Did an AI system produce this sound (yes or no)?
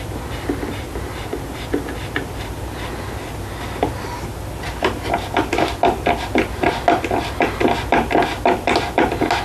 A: no